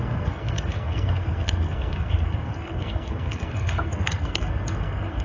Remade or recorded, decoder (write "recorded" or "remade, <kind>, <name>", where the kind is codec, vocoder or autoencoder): remade, codec, SNAC